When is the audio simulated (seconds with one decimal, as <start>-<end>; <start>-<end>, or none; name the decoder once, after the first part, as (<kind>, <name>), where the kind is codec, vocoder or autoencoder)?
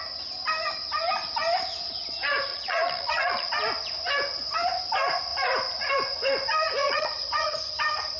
2.5-3.5 (vocoder, Vocos); 6.8-7.6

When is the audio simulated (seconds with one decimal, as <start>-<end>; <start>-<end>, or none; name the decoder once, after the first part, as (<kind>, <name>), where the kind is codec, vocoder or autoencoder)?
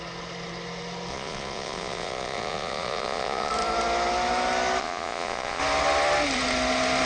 1.1-3.5 (vocoder, Vocos); 4.8-5.6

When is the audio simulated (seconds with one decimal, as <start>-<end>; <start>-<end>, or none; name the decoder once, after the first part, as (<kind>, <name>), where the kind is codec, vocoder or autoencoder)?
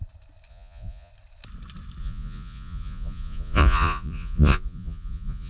0.5-1.1 (vocoder, Vocos); 2.0-5.5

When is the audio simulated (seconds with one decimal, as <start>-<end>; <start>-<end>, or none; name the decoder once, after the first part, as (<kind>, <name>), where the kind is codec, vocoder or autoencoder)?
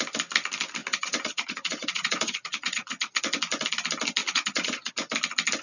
0.8-3.2 (vocoder, Vocos); 4.2-4.9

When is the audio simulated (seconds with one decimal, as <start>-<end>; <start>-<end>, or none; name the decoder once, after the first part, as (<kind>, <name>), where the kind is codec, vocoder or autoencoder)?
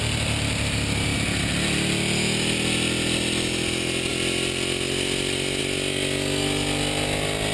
none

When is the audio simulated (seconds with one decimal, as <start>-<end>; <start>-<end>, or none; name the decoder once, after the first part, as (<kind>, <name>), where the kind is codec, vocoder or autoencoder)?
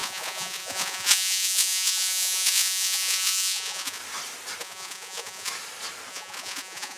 0.0-4.0 (vocoder, Vocos); 4.6-5.5; 6.1-7.0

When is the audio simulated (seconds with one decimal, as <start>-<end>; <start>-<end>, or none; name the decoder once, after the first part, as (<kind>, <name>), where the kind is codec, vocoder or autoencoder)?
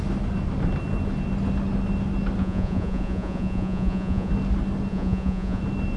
2.4-4.3 (vocoder, Vocos); 4.9-5.6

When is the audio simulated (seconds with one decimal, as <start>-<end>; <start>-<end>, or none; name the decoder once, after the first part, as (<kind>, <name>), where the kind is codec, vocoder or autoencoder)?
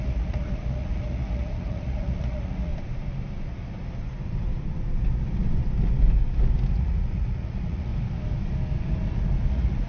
0.0-2.7 (vocoder, Vocos); 6.7-7.9; 9.5-9.9